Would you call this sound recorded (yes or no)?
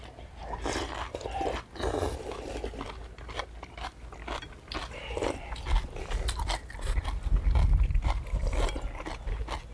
yes